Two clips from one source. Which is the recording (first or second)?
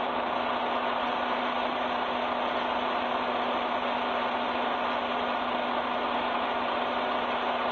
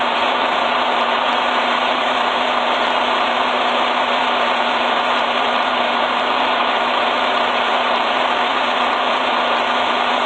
first